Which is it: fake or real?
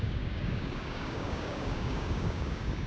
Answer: fake